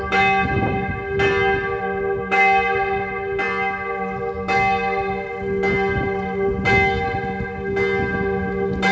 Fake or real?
real